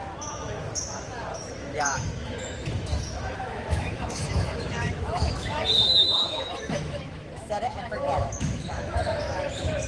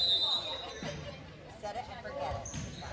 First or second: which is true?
second